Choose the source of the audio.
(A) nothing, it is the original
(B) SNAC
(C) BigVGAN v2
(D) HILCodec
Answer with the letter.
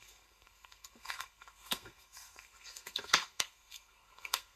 B